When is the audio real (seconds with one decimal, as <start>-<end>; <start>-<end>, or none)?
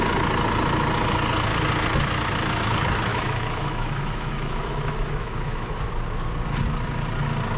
0.0-3.1; 5.9-7.6